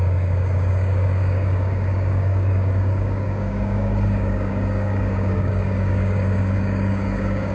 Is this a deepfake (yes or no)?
yes